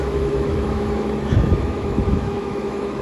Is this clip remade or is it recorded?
remade